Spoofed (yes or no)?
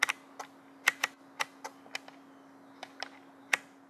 no